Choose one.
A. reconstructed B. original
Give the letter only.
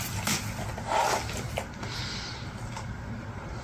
B